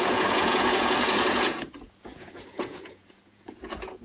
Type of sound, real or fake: fake